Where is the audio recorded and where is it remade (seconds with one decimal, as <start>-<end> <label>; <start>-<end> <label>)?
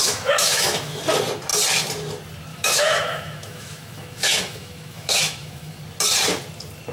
0.0-1.0 remade; 1.0-2.5 recorded; 2.5-5.8 remade; 5.8-6.9 recorded